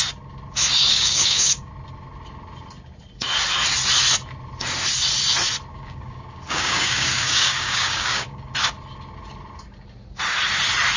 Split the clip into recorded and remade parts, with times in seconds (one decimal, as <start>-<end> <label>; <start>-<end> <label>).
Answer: 0.0-0.9 recorded; 0.9-1.7 remade; 1.7-5.7 recorded; 5.7-8.5 remade; 8.5-11.0 recorded